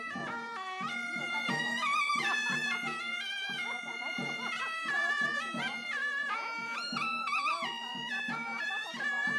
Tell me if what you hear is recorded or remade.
remade